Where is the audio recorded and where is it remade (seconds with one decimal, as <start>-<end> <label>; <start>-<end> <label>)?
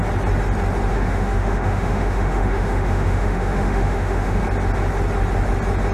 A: 0.0-0.9 recorded; 0.9-4.4 remade; 4.4-5.9 recorded